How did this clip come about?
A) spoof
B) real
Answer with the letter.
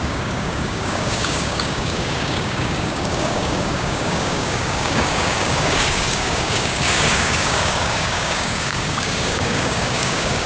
A